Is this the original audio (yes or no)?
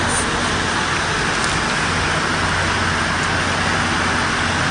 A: yes